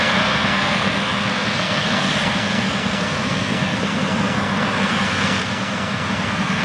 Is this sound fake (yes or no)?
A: yes